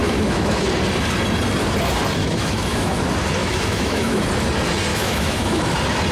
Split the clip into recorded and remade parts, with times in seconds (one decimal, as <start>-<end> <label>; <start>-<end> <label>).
0.0-0.6 remade; 0.6-2.2 recorded; 2.2-3.0 remade; 3.0-3.4 recorded; 3.4-4.2 remade; 4.2-4.9 recorded; 4.9-5.6 remade; 5.6-6.1 recorded